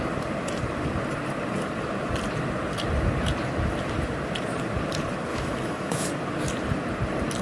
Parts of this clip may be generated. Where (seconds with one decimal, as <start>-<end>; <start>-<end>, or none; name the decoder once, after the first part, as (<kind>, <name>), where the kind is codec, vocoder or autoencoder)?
5.3-6.1 (autoencoder, DAC-VAE)